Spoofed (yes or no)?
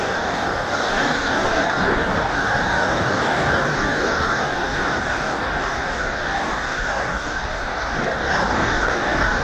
yes